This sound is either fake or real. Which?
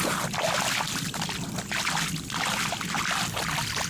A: real